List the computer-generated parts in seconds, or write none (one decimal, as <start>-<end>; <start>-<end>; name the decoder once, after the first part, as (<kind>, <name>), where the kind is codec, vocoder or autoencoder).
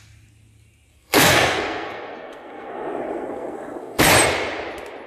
0.9-4.0 (codec, SNAC)